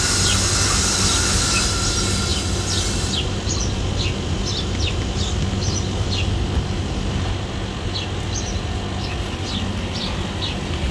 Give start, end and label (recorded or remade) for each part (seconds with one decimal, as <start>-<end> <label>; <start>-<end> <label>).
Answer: 0.0-10.9 recorded